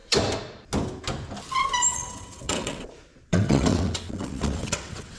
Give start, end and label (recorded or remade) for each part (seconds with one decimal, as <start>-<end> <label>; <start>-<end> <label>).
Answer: 0.0-1.9 recorded; 1.9-2.9 remade; 2.9-3.3 recorded; 3.3-5.2 remade